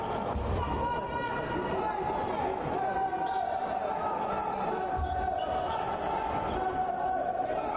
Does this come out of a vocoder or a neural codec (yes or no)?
no